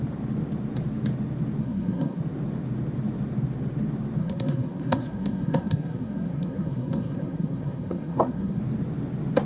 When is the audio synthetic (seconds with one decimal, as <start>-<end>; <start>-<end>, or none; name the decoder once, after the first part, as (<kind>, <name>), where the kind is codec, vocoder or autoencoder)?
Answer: 1.6-2.2 (codec, SNAC); 4.2-8.6